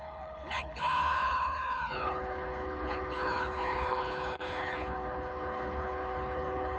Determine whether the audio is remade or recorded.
remade